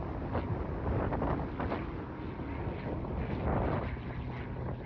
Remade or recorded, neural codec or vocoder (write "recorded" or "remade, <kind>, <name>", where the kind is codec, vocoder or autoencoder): recorded